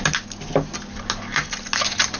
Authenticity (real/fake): real